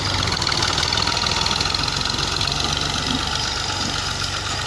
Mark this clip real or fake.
real